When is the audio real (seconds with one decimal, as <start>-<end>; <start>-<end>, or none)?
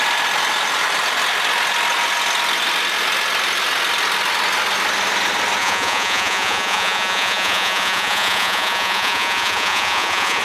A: 0.0-5.6